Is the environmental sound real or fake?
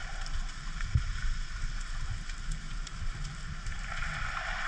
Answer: real